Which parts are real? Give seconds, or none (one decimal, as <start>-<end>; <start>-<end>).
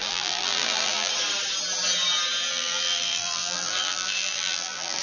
1.1-2.5